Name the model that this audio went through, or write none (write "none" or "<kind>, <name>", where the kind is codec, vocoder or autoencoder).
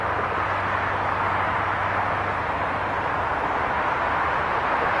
none